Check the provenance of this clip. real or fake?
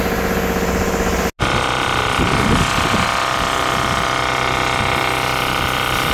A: real